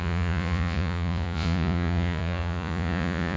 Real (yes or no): no